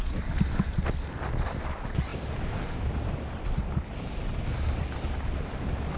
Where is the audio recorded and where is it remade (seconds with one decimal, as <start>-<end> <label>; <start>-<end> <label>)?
0.0-6.0 recorded